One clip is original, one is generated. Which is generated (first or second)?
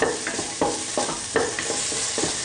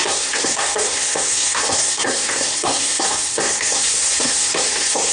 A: second